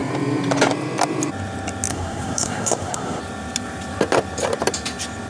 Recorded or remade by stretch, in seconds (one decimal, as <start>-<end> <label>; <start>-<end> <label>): 0.0-1.9 recorded; 1.9-3.2 remade; 3.2-5.3 recorded